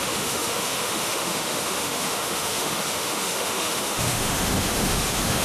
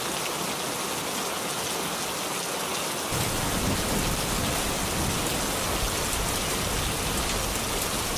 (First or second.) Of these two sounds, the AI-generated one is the first